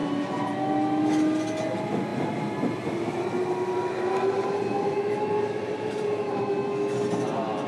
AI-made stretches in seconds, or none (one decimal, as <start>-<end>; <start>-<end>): none